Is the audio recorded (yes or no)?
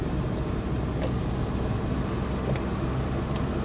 yes